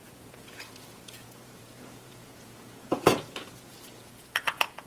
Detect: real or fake fake